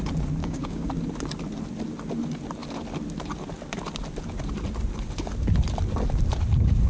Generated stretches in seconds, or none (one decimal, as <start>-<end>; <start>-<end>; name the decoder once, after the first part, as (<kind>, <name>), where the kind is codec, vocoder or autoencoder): 0.4-0.9 (codec, DAC)